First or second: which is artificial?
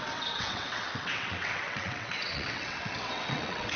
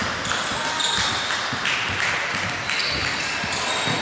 first